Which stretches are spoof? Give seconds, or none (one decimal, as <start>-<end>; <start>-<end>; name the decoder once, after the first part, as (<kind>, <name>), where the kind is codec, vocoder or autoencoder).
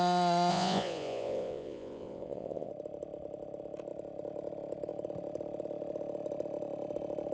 0.5-2.7 (vocoder, Vocos)